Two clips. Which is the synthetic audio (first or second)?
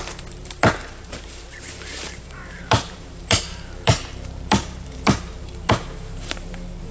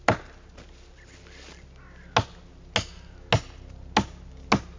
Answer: first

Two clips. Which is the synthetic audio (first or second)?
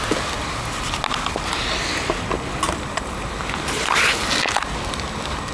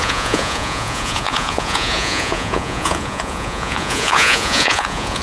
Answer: second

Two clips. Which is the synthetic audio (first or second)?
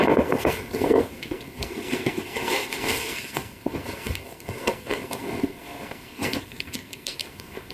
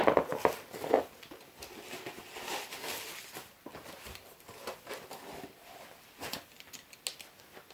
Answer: first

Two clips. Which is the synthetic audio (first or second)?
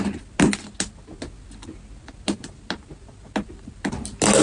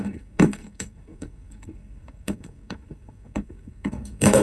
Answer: second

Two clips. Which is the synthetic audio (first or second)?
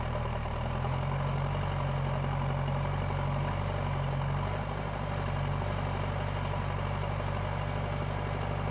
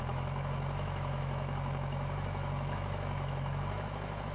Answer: second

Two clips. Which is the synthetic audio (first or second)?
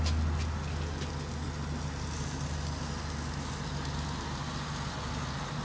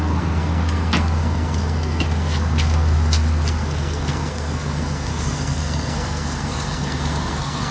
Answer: second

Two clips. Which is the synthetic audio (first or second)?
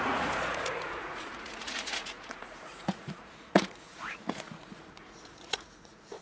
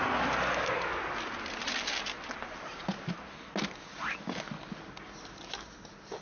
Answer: first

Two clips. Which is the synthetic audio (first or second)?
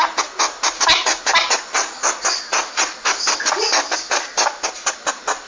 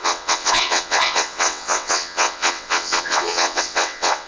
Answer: second